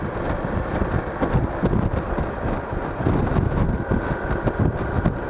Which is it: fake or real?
real